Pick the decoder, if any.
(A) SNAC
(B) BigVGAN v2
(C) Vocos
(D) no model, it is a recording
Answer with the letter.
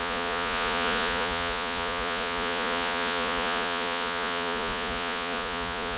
C